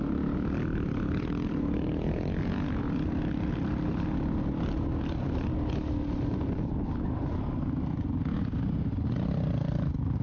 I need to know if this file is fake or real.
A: real